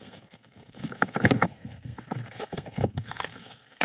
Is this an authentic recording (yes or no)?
no